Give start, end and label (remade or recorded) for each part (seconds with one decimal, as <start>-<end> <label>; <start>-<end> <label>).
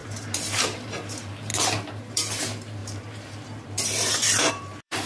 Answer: 0.0-1.5 remade; 1.5-2.1 recorded; 2.1-5.1 remade